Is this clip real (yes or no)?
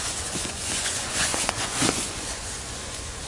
no